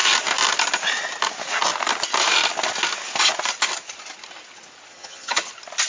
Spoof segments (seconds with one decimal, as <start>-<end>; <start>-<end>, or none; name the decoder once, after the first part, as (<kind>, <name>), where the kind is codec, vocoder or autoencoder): 4.9-5.5 (vocoder, HiFi-GAN)